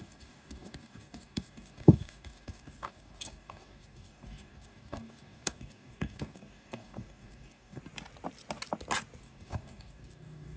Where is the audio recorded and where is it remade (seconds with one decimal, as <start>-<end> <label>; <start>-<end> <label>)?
0.0-7.8 remade; 7.8-9.2 recorded; 9.2-10.6 remade